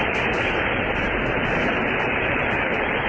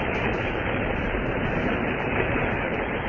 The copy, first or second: second